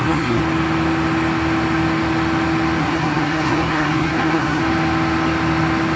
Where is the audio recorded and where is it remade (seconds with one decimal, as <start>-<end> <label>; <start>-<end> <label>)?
0.0-0.4 remade; 0.4-2.8 recorded; 2.8-4.6 remade; 4.6-6.0 recorded